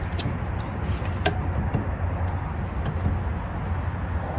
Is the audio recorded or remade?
recorded